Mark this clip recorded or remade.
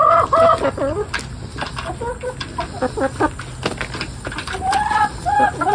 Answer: recorded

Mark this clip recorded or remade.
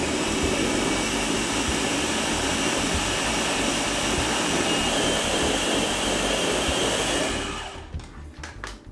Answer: recorded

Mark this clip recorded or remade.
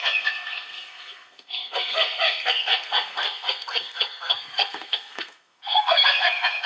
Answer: remade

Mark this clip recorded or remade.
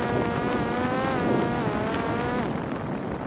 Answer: recorded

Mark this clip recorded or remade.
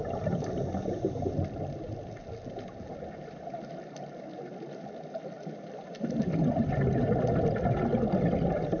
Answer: recorded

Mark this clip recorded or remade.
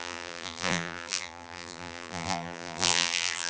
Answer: remade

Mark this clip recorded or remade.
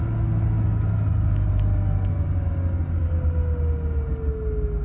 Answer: recorded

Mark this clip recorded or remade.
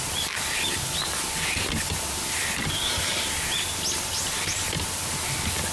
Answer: recorded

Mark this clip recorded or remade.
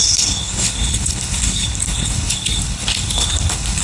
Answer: remade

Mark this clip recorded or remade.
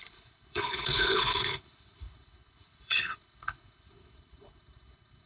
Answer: remade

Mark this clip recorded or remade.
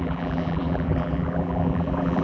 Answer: remade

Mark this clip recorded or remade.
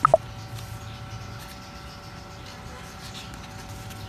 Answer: recorded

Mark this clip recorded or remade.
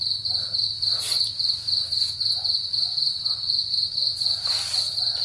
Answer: recorded